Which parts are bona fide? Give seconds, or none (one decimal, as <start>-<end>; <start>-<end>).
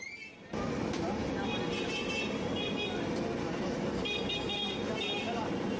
0.0-5.8